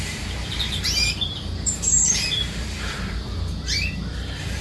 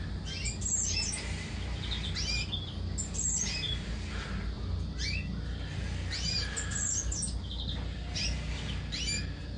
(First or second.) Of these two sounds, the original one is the second